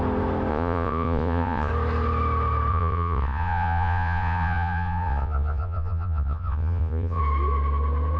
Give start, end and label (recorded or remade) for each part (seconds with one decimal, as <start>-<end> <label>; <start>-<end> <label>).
0.0-0.5 recorded; 0.5-1.7 remade; 1.7-2.7 recorded; 2.7-7.2 remade; 7.2-8.2 recorded